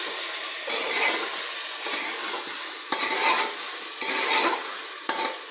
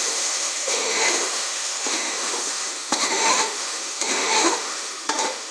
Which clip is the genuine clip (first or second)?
first